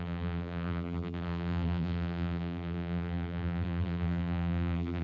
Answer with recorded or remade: remade